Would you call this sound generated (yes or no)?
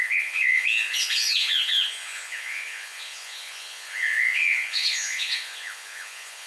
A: yes